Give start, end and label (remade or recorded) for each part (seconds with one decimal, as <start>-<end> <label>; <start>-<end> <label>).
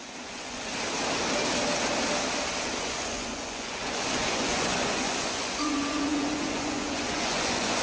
0.0-0.7 remade; 0.7-2.8 recorded; 2.8-7.8 remade